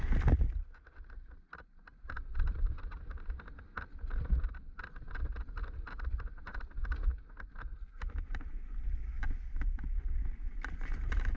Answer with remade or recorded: recorded